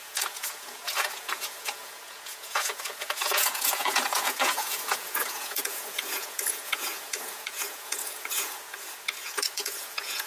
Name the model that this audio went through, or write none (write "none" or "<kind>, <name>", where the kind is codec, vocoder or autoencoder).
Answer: vocoder, Vocos